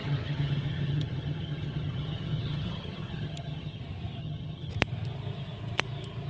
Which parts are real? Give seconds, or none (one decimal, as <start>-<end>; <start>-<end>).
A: 3.8-4.2; 4.7-6.3